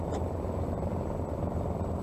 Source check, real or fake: fake